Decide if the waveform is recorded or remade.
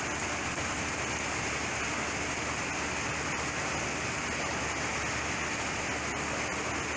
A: recorded